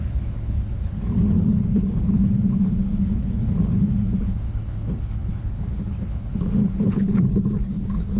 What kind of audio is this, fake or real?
fake